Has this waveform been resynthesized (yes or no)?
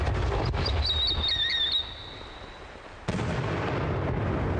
no